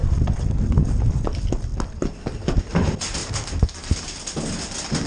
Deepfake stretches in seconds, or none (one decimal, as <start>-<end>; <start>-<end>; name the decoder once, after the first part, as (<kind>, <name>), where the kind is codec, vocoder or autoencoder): 0.5-1.7 (vocoder, BigVGAN v2); 2.6-3.2; 3.9-5.1